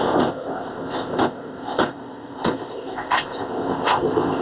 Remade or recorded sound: remade